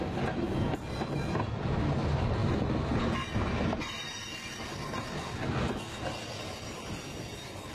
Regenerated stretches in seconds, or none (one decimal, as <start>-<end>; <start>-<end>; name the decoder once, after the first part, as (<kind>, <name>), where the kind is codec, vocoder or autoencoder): none